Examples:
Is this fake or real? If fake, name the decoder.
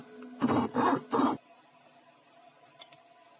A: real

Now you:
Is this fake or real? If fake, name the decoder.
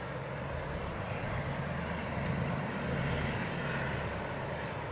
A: real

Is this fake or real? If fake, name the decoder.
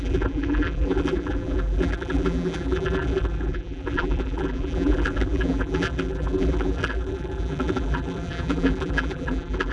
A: fake, vocoder, BigVGAN v2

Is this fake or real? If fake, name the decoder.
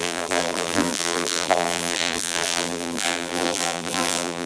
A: fake, vocoder, BigVGAN v2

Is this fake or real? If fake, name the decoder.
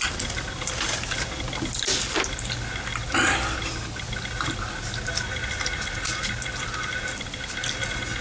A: real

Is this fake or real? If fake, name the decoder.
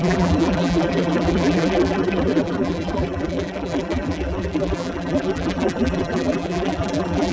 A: fake, vocoder, BigVGAN v2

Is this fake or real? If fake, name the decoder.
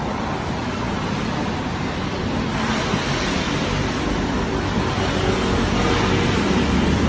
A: real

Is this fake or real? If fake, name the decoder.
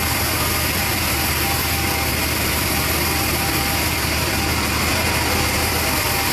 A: fake, vocoder, BigVGAN v2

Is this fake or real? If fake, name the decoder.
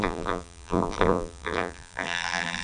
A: fake, vocoder, BigVGAN v2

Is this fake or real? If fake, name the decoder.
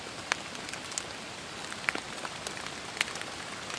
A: real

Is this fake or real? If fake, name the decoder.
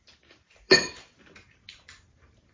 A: fake, vocoder, BigVGAN v2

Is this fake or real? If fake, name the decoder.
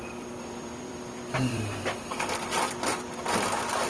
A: fake, vocoder, BigVGAN v2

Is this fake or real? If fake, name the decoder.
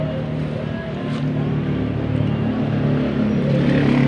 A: real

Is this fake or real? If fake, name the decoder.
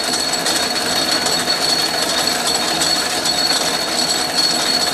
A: real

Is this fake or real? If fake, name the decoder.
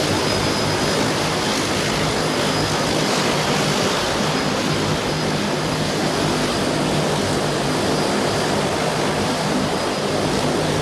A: real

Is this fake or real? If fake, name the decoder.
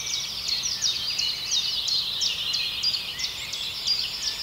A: real